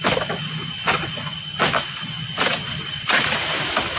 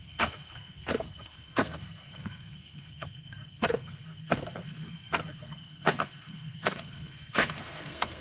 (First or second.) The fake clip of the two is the second